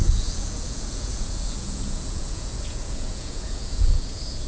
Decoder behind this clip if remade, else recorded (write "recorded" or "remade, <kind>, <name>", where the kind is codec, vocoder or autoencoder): remade, vocoder, Vocos